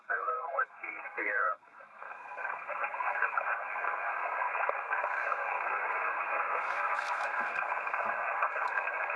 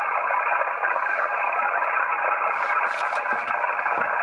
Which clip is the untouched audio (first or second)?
second